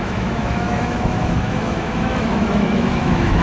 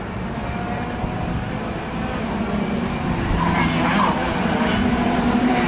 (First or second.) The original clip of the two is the second